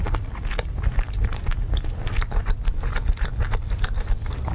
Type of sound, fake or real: real